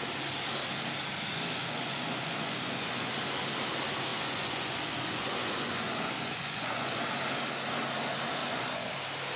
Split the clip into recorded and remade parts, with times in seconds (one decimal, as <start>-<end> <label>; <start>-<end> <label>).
0.0-1.3 recorded; 1.3-3.1 remade; 3.1-4.1 recorded; 4.1-7.0 remade; 7.0-8.4 recorded; 8.4-8.9 remade; 8.9-9.4 recorded